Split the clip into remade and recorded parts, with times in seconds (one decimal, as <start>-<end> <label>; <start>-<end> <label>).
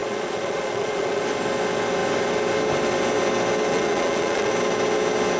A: 0.0-1.2 remade; 1.2-3.7 recorded; 3.7-4.5 remade; 4.5-5.4 recorded